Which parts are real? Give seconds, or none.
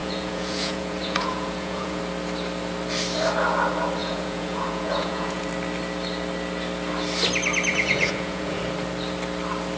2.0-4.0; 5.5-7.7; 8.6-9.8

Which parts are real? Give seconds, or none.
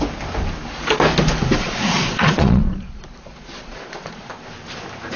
0.0-1.6; 4.3-5.2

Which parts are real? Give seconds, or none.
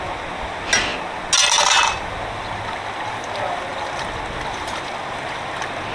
0.0-5.9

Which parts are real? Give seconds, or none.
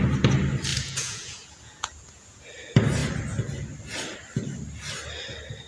0.0-0.7; 2.4-5.7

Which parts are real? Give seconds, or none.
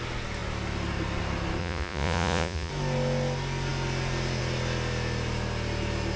0.0-1.6; 2.7-6.2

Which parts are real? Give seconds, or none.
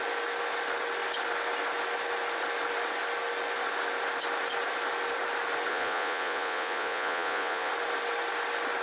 0.0-5.7; 7.7-8.8